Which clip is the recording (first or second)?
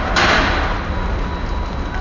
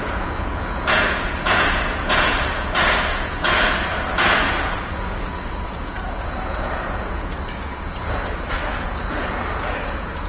first